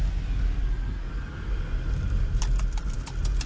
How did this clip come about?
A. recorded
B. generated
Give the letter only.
A